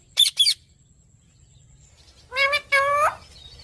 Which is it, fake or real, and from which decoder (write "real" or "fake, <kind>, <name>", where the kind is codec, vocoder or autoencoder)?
real